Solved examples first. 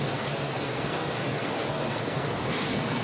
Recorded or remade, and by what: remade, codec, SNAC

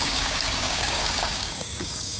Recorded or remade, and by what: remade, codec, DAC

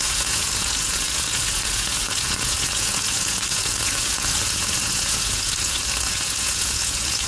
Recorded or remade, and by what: remade, vocoder, Vocos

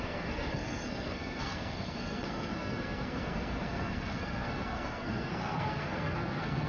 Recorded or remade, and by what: remade, codec, SNAC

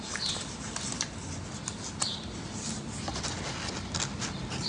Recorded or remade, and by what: recorded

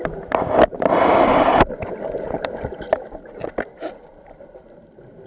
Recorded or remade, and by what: recorded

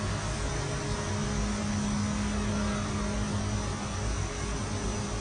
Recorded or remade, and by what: recorded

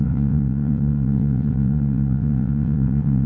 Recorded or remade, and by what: remade, vocoder, WaveNeXt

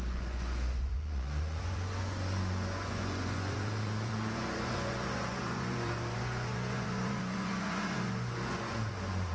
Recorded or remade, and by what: remade, vocoder, Vocos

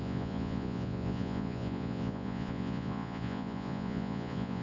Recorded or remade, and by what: remade, vocoder, Vocos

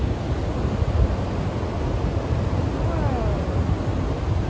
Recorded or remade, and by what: recorded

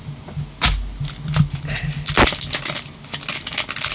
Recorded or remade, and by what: recorded